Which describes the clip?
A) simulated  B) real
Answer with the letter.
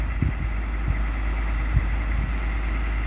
B